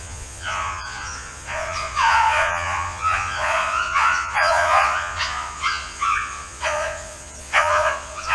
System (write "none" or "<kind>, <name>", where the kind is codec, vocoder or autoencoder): vocoder, Vocos